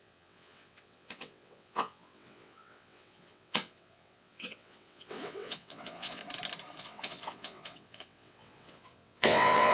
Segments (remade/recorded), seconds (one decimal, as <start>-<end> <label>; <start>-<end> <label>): 0.0-6.2 remade; 6.2-6.8 recorded; 6.8-9.7 remade